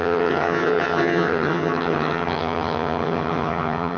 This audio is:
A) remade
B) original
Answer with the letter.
A